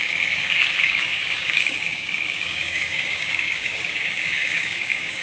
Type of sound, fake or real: fake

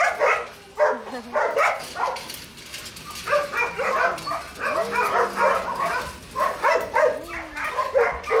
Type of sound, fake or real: real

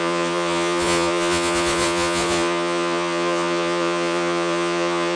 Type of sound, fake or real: fake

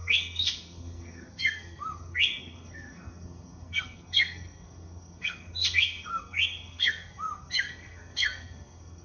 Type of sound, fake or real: fake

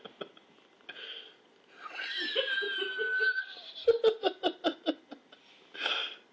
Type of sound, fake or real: real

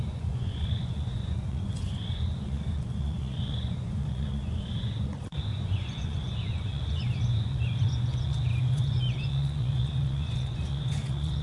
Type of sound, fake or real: fake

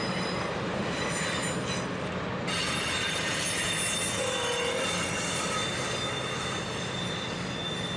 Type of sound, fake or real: real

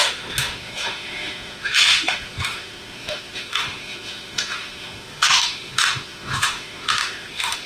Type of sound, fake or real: fake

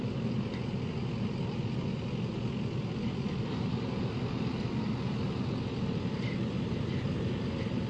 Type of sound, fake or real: real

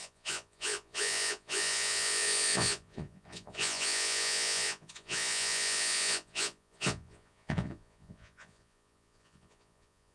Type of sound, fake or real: fake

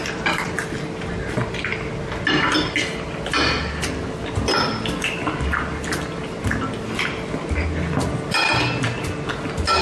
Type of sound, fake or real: real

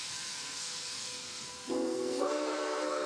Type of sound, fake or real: fake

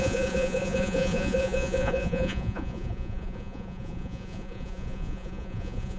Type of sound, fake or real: fake